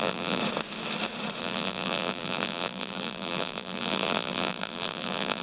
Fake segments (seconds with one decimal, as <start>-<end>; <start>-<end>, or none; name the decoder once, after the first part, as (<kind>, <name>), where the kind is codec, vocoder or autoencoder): 0.0-0.4 (vocoder, BigVGAN v2); 1.4-5.4

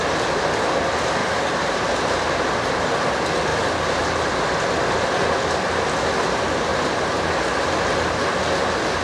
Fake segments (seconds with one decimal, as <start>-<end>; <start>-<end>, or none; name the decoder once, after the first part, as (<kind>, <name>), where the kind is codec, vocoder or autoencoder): 1.2-1.8 (vocoder, BigVGAN v2); 3.5-4.5; 6.7-7.3

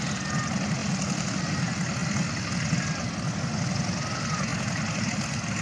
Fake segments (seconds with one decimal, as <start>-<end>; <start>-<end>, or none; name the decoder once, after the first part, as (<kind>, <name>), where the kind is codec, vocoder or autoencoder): 0.8-1.3 (vocoder, BigVGAN v2); 4.5-5.6